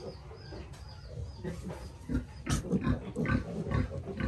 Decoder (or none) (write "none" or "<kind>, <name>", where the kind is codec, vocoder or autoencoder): none